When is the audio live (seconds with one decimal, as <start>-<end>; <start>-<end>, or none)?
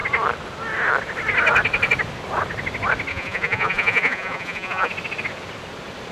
0.0-3.1; 4.9-6.1